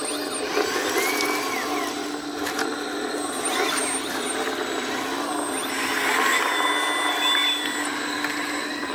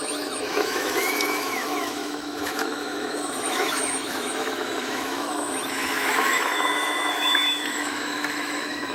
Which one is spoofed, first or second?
second